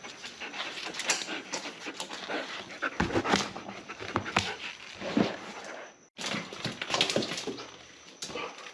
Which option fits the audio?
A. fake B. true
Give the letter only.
B